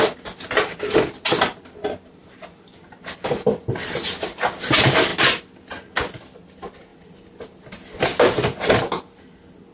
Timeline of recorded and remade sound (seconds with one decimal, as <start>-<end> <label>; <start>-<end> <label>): 0.0-9.7 recorded